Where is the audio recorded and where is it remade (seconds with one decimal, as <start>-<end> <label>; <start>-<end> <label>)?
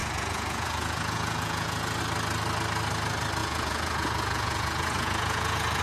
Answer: 0.0-2.0 remade; 2.0-3.4 recorded; 3.4-5.8 remade